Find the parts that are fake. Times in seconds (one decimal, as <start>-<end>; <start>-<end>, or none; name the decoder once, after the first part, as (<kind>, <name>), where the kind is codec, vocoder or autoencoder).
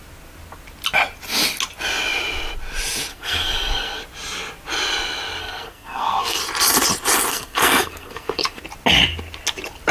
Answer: 3.1-4.0 (codec, SNAC); 5.4-6.4; 7.3-8.6